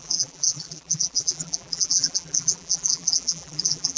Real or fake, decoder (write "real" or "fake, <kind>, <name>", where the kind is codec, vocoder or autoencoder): fake, vocoder, BigVGAN v2